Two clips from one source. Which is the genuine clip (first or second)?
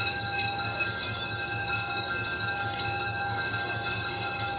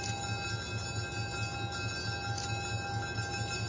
second